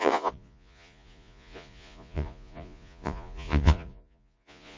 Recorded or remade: remade